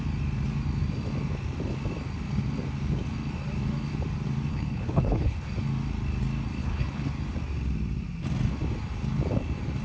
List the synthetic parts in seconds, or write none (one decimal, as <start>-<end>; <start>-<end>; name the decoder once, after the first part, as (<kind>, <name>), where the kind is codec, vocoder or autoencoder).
4.5-5.5 (codec, HILCodec); 6.6-7.1